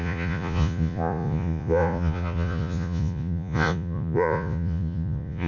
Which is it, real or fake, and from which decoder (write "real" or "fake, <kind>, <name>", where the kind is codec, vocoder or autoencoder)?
fake, vocoder, Vocos